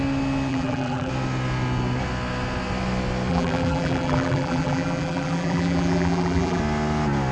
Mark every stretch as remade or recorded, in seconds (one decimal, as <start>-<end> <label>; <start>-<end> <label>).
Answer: 0.0-0.5 recorded; 0.5-1.1 remade; 1.1-3.3 recorded; 3.3-6.6 remade; 6.6-7.3 recorded